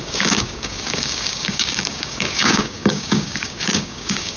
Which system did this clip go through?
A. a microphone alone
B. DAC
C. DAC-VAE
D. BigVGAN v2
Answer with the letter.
B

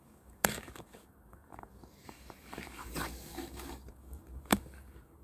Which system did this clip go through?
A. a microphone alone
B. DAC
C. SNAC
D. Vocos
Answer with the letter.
B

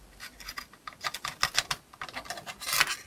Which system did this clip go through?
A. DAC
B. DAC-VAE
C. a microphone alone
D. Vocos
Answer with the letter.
C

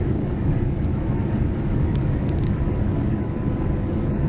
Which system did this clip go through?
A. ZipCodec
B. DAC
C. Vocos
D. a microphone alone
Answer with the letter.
B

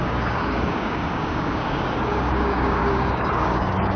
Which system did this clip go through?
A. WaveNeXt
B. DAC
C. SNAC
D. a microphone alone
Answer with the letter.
B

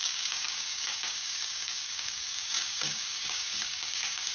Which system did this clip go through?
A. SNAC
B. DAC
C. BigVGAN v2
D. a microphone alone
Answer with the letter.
B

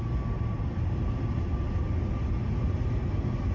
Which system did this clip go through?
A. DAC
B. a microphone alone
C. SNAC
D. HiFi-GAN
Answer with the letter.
B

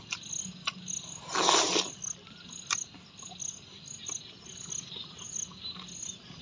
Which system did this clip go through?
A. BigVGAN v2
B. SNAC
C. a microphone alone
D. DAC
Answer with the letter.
C